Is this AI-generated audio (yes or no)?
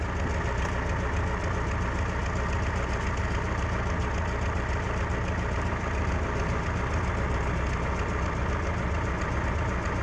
no